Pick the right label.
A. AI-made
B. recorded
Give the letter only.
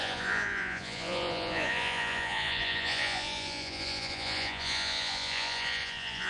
A